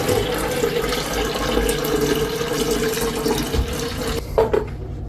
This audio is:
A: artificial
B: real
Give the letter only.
B